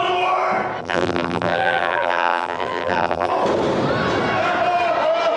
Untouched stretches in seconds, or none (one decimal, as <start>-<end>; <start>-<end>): 0.0-0.8; 3.3-5.4